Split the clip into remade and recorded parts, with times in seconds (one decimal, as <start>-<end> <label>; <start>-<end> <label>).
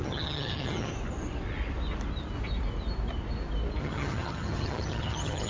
0.0-0.9 remade; 0.9-3.8 recorded; 3.8-5.5 remade